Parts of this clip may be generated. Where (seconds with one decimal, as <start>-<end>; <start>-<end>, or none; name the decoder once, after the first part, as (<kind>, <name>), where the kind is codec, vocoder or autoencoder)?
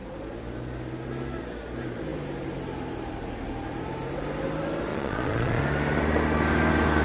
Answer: 4.9-5.6 (vocoder, Vocos)